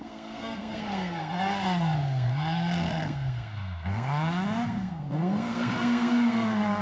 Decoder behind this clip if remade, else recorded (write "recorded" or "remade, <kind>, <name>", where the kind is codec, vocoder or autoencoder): remade, codec, SNAC